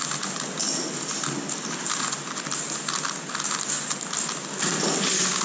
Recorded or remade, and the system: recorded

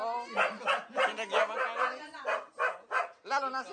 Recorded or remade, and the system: recorded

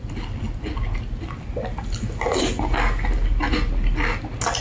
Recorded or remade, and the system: recorded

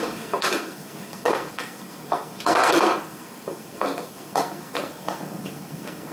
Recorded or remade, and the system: remade, codec, SNAC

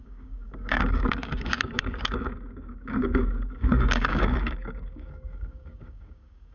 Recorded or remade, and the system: remade, codec, DAC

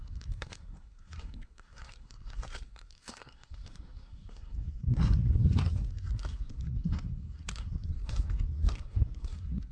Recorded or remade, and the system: remade, codec, SNAC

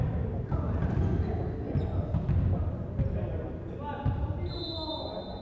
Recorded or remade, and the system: recorded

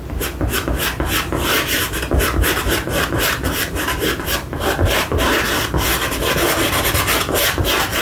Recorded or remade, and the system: recorded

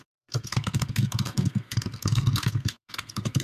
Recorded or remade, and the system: remade, codec, SNAC